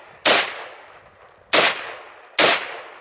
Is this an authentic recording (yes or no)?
yes